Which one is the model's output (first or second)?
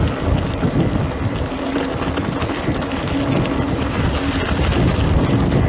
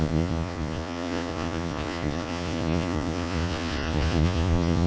second